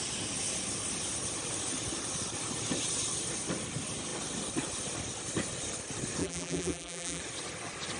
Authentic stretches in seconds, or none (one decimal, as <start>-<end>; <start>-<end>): 0.0-6.2; 7.2-8.0